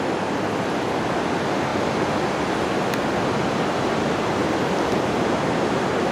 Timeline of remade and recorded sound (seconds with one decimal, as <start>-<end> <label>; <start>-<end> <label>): 0.0-6.1 recorded